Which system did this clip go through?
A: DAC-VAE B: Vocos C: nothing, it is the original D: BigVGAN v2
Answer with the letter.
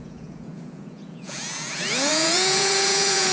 B